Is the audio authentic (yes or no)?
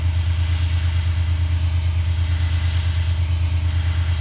yes